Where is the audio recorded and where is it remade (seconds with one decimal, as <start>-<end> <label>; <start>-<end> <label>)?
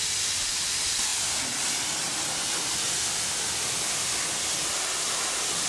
0.0-5.7 recorded